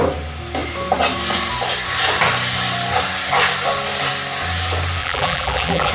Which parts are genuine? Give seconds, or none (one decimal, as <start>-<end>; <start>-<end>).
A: 0.0-5.0